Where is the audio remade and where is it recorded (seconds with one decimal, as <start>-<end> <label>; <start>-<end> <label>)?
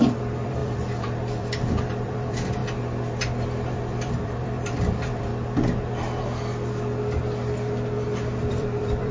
0.0-2.6 remade; 2.6-3.7 recorded; 3.7-5.3 remade; 5.3-8.5 recorded; 8.5-9.1 remade